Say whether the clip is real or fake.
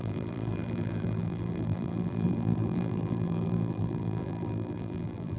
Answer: fake